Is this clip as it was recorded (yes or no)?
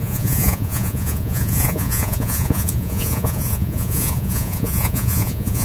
no